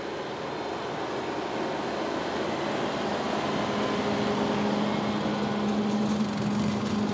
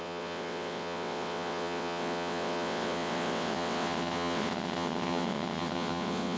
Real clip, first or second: first